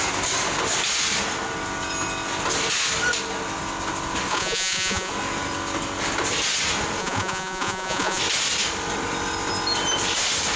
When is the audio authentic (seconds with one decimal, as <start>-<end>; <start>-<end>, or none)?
0.0-4.3; 5.1-7.0; 8.2-10.6